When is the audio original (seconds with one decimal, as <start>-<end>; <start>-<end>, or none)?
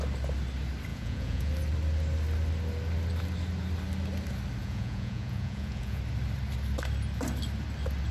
0.0-0.9; 1.5-4.6; 6.0-8.1